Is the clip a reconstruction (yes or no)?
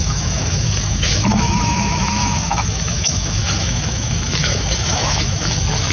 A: yes